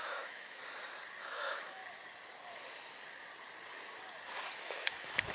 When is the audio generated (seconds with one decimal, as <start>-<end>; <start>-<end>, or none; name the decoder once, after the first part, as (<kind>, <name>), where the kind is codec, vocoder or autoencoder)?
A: 0.0-0.6 (autoencoder, DAC-VAE); 1.2-1.8; 4.6-5.3